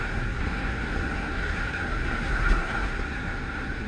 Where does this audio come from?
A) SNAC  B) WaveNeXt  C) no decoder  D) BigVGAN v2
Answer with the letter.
A